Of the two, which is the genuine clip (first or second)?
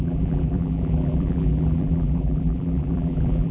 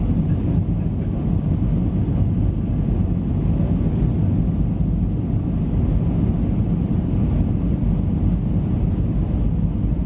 second